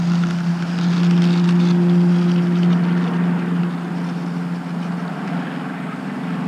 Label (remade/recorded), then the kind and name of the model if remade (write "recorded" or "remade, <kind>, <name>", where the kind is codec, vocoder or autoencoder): recorded